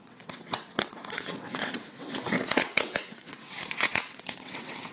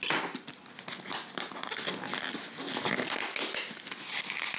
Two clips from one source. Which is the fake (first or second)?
first